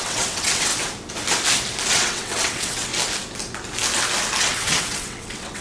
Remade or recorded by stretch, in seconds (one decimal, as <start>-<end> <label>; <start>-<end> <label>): 0.0-0.7 remade; 0.7-1.9 recorded; 1.9-2.9 remade; 2.9-4.4 recorded; 4.4-5.6 remade